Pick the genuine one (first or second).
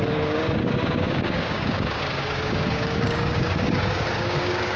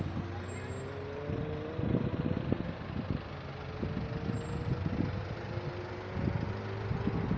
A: second